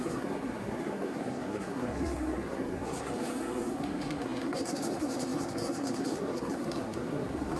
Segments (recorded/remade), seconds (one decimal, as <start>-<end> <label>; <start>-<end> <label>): 0.0-7.6 remade